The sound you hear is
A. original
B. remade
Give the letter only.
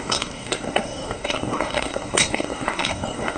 B